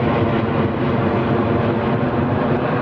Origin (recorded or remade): recorded